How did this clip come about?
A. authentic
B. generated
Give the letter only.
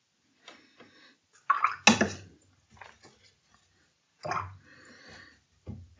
A